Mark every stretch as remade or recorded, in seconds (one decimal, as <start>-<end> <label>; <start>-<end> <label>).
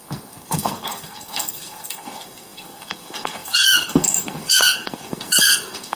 0.0-5.9 remade